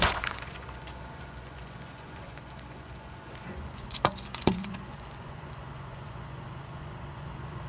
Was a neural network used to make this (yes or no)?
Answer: yes